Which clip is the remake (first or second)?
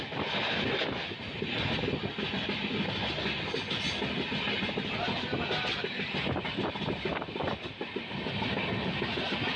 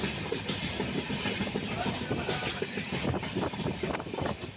second